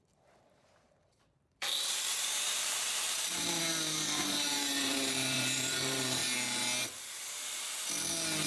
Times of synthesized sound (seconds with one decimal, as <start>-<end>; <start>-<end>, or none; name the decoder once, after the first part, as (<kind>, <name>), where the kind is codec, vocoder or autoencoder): 0.0-6.2 (vocoder, BigVGAN v2)